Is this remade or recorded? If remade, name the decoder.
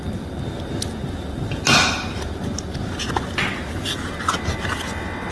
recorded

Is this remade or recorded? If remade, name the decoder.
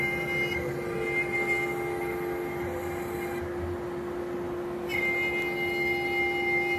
recorded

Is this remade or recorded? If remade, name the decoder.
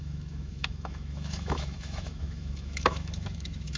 remade, autoencoder, DAC-VAE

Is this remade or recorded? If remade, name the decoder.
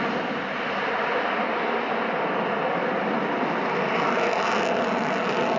recorded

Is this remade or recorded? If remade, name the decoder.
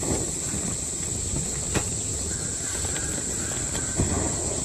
recorded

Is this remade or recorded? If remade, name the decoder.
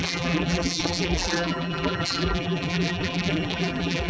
remade, vocoder, BigVGAN v2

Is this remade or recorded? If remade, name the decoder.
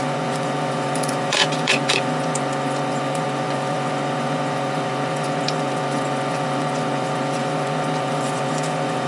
remade, vocoder, Vocos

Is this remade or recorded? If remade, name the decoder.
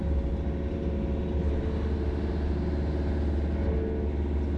recorded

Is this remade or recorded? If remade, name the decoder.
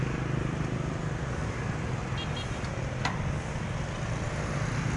recorded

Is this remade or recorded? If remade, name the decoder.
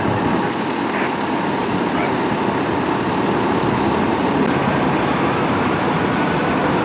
recorded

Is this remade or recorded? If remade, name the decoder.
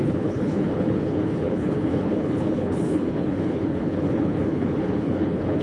remade, codec, HILCodec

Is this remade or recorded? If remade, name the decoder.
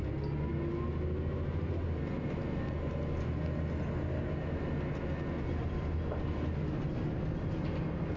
recorded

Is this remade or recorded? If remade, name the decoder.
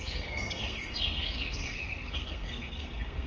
remade, codec, SNAC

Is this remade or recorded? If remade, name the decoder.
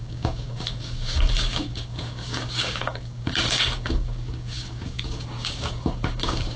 remade, codec, DAC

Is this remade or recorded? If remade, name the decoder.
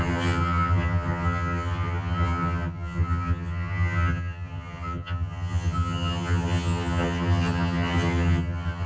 remade, vocoder, HiFi-GAN